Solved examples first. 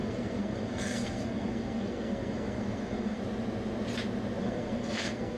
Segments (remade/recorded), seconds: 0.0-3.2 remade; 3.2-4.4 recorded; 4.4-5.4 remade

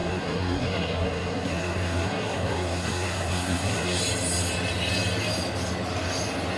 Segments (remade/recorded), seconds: 0.0-4.0 remade; 4.0-6.6 recorded

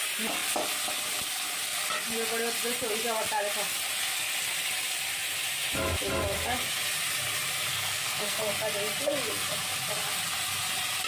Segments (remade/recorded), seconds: 0.0-7.7 recorded; 7.7-8.4 remade; 8.4-11.1 recorded

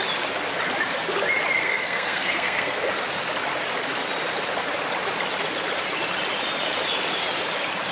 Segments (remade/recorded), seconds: 0.0-1.6 recorded; 1.6-2.8 remade; 2.8-7.9 recorded

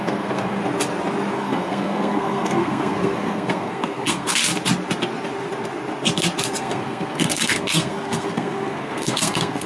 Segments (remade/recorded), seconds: 0.0-0.6 remade; 0.6-1.3 recorded; 1.3-4.4 remade; 4.4-6.6 recorded; 6.6-9.7 remade